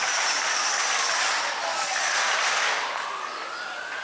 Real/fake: real